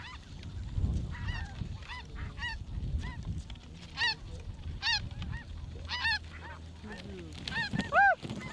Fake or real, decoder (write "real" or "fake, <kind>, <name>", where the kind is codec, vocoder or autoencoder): real